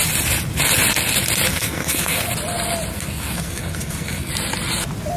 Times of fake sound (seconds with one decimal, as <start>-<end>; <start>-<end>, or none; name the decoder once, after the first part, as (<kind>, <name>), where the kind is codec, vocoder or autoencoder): 1.5-2.3 (codec, SNAC); 2.9-4.3

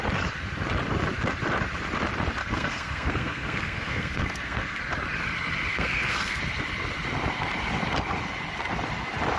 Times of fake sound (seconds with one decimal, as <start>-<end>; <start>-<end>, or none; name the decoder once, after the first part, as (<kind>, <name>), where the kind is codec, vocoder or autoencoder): 2.4-4.8 (codec, SNAC); 5.7-6.4